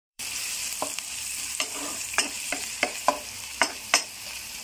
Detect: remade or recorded remade